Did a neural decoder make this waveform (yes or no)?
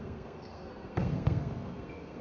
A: yes